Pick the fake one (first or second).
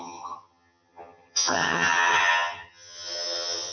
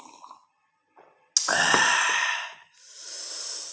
first